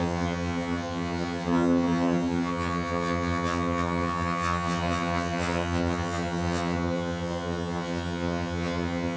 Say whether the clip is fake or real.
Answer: fake